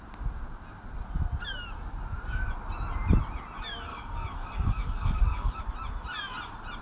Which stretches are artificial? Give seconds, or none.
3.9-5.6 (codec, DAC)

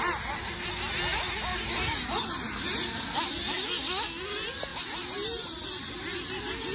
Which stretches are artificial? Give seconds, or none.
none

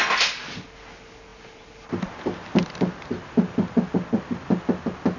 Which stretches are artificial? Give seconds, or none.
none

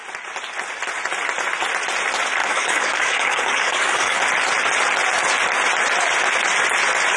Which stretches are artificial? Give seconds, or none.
2.4-4.2 (codec, DAC)

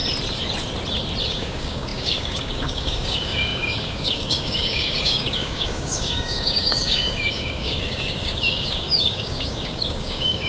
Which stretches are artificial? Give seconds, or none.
1.2-10.5 (codec, DAC)

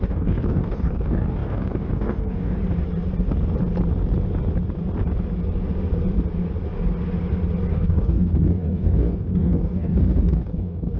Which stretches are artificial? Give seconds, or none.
0.0-2.6 (codec, DAC); 7.7-11.0